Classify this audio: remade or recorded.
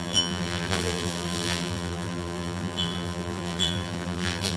remade